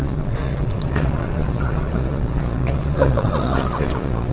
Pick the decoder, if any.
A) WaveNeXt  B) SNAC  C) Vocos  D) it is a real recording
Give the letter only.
C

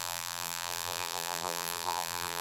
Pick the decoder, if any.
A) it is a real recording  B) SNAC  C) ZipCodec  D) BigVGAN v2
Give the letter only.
D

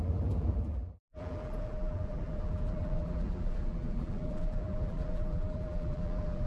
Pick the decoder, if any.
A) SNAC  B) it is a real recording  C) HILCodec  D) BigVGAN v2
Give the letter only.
D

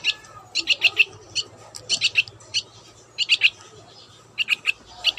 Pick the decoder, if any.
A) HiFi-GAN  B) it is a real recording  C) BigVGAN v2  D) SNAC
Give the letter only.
B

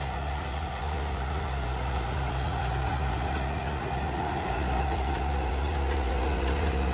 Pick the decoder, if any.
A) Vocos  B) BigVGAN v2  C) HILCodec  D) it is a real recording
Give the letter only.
A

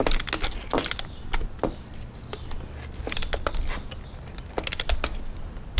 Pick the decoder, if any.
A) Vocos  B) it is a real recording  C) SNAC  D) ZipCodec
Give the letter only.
B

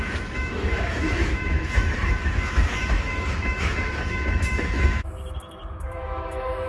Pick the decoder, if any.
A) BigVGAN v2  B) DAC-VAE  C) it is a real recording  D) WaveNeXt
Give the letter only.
B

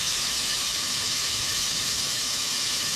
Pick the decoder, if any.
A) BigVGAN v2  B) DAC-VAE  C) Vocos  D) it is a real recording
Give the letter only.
B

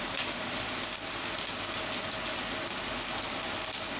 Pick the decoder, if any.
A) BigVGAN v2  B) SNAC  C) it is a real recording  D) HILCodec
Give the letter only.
C